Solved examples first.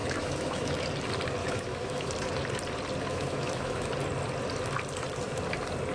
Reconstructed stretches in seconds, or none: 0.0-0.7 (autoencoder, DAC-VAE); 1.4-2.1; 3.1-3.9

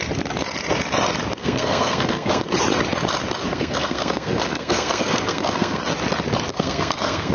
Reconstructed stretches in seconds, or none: 1.4-2.4 (codec, SNAC); 3.5-5.8; 6.5-7.3

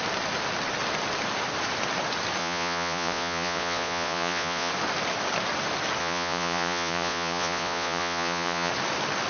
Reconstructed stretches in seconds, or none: 2.4-4.7 (vocoder, Vocos); 6.0-8.7

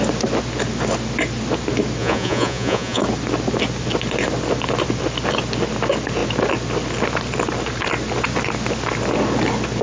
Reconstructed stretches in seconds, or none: 2.0-3.0 (vocoder, Vocos)

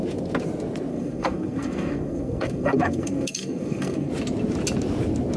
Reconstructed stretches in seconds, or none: 0.9-4.1 (codec, SNAC)